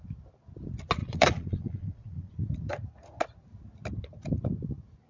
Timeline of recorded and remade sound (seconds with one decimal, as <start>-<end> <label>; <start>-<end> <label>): 0.0-1.0 recorded; 1.0-2.3 remade; 2.3-5.1 recorded